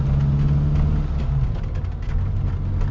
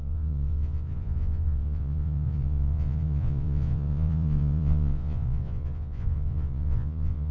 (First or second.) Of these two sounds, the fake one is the second